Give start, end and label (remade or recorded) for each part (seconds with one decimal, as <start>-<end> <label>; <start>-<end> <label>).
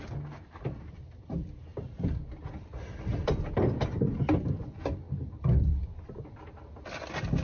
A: 0.0-1.7 recorded; 1.7-6.1 remade; 6.1-7.4 recorded